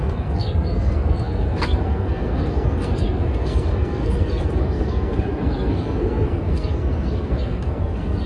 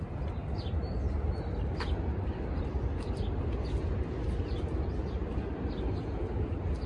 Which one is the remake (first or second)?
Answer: first